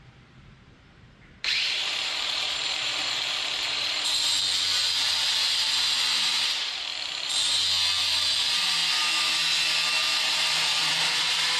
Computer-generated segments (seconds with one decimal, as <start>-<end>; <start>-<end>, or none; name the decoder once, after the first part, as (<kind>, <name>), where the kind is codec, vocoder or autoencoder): 0.0-4.3 (vocoder, BigVGAN v2); 5.6-6.9; 8.0-8.8; 10.0-11.6